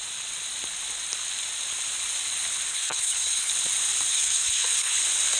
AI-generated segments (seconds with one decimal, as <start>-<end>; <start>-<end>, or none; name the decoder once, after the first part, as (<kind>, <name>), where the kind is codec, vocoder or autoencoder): 2.7-3.5 (codec, HILCodec); 4.1-5.0

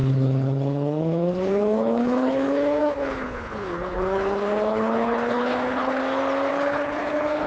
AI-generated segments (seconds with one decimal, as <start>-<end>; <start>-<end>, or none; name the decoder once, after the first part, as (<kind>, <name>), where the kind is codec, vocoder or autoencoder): 0.0-6.0 (codec, HILCodec); 6.5-7.5